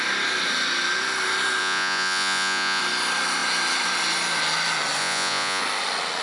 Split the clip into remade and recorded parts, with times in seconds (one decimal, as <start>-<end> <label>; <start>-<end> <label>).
0.0-1.6 recorded; 1.6-2.8 remade; 2.8-5.0 recorded; 5.0-5.6 remade; 5.6-6.2 recorded